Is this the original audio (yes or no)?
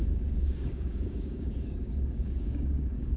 no